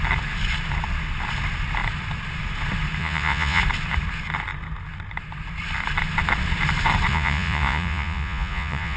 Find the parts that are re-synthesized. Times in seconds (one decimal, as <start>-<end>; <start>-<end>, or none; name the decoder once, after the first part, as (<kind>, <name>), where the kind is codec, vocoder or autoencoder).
3.0-3.6 (vocoder, Vocos); 7.1-9.0